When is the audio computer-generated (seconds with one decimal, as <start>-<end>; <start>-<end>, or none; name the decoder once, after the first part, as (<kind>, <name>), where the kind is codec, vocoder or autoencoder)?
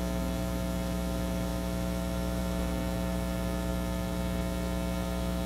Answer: 0.0-5.5 (autoencoder, DAC-VAE)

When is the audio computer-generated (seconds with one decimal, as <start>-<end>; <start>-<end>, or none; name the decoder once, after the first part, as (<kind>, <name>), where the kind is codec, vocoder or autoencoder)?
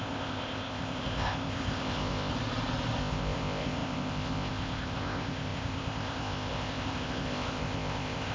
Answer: 0.0-2.3 (codec, ZipCodec); 3.0-8.3